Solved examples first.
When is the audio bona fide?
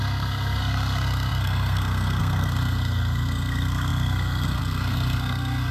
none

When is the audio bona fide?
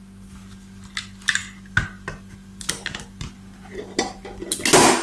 0.0-5.0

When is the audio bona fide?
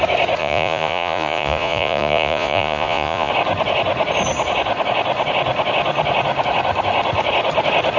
0.0-0.4; 3.3-8.0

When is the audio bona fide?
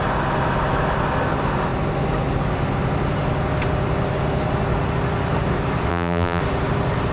0.0-5.9; 6.4-7.1